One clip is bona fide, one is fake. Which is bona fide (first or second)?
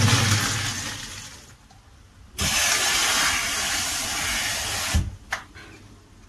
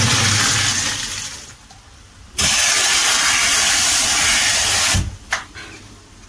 first